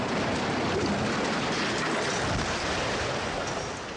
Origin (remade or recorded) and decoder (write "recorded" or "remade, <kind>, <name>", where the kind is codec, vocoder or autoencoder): recorded